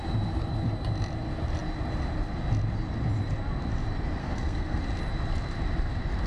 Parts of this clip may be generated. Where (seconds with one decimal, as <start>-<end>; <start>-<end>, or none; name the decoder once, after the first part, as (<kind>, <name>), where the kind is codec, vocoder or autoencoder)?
4.2-4.8 (codec, SNAC)